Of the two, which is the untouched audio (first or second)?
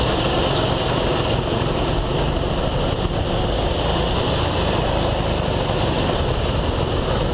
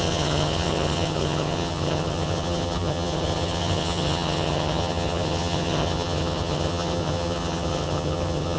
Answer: first